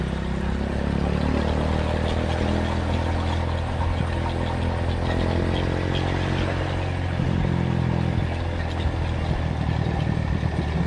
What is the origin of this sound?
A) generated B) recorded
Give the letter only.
B